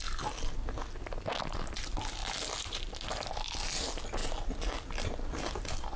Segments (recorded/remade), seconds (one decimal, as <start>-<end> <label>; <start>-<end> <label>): 0.0-6.0 recorded